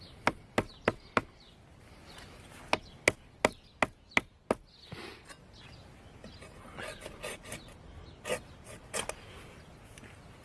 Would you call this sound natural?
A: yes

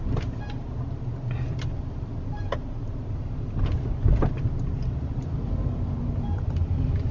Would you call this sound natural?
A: yes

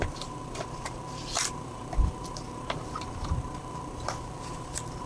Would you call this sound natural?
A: no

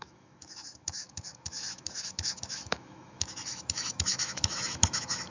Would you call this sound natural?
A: no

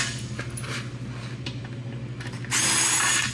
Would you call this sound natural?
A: yes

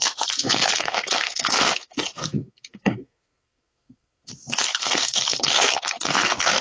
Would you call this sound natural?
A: no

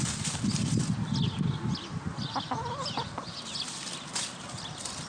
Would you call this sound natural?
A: yes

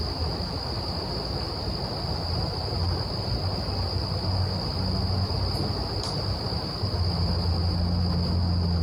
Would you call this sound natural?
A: yes